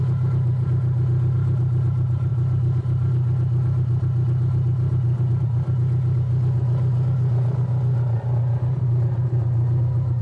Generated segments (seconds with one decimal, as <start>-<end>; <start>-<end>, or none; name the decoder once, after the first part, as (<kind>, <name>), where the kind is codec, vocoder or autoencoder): none